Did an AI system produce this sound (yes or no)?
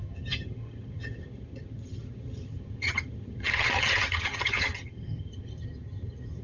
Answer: yes